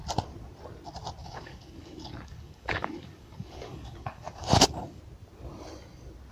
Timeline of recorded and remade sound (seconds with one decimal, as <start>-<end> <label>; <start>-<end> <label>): 0.0-1.2 recorded; 1.2-5.0 remade; 5.0-6.3 recorded